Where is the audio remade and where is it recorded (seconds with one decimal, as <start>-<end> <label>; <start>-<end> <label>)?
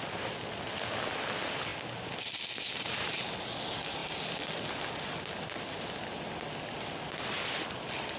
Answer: 0.0-8.2 recorded